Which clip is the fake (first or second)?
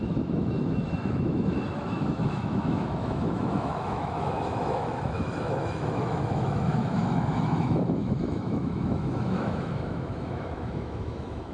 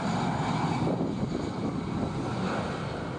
first